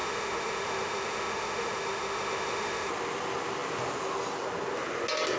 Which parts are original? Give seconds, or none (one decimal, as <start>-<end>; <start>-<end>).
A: 2.9-5.4

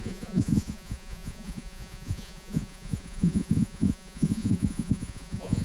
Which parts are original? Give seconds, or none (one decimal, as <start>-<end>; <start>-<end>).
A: none

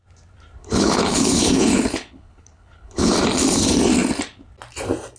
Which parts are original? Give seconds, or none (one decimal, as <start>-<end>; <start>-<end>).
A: 0.0-0.6; 3.1-5.2

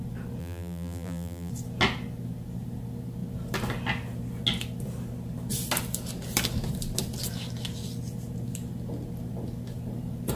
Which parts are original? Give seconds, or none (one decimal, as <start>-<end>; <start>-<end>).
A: 0.0-0.4; 1.5-10.4